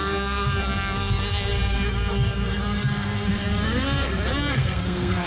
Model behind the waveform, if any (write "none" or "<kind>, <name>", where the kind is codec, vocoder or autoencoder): codec, SNAC